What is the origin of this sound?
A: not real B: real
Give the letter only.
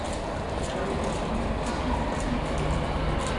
B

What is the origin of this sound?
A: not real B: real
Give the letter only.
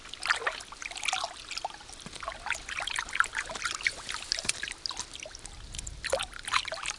B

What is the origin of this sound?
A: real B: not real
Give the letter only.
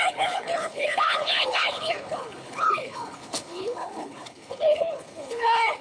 B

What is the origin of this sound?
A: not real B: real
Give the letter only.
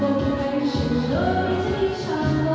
B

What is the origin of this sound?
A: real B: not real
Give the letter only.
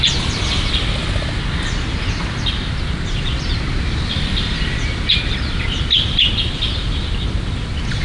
A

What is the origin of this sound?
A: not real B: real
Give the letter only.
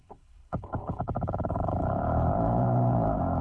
A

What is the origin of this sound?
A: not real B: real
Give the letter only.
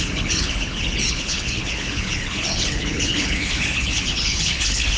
A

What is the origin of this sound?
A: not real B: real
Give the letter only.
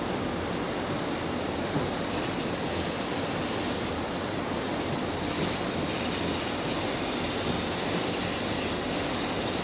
B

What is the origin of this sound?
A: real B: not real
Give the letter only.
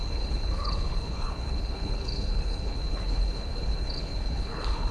B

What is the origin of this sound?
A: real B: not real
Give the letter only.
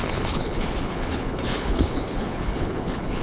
B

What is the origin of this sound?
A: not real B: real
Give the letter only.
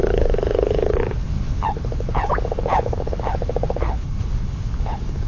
A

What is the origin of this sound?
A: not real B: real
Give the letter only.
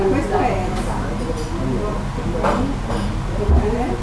B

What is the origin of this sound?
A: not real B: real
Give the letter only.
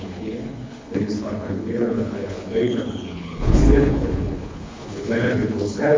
A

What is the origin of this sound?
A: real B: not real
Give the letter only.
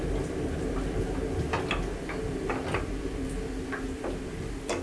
A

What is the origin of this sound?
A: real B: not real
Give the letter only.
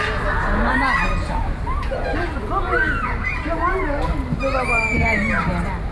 A